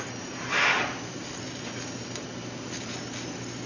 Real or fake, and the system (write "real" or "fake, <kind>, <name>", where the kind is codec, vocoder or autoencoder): real